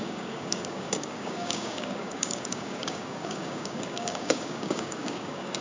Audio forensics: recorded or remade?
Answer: remade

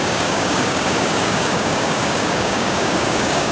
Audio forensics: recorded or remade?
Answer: remade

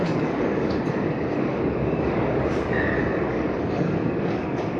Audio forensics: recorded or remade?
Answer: remade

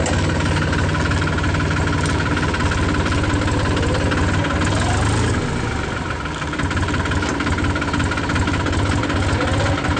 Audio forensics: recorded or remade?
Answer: recorded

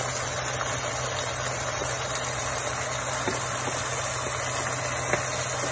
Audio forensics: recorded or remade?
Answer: recorded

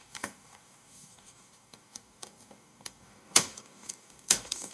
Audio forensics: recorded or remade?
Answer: remade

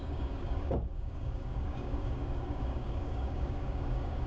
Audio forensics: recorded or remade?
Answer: remade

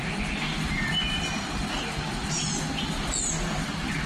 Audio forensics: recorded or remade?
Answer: recorded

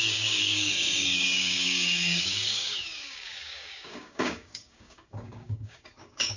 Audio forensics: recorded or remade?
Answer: remade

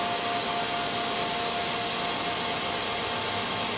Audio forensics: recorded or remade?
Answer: recorded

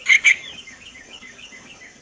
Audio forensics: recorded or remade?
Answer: remade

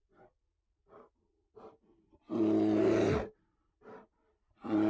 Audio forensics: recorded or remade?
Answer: recorded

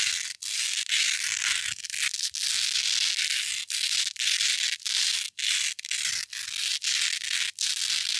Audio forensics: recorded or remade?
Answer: recorded